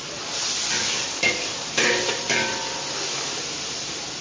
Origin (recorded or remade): recorded